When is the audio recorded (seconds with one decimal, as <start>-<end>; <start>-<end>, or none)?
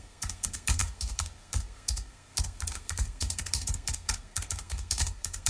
none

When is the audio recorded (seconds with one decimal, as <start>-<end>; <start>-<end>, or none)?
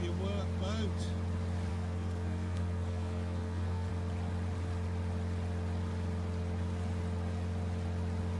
0.0-1.7; 3.9-8.4